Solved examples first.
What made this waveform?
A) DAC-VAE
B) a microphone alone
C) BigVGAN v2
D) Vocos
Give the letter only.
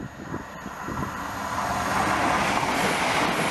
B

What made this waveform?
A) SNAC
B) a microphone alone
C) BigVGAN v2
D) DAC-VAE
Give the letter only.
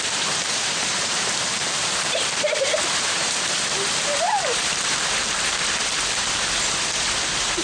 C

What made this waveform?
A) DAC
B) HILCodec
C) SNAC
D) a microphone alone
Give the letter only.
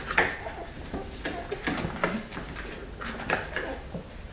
D